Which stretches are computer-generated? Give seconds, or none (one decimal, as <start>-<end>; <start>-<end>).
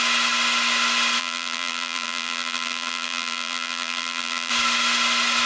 1.2-4.5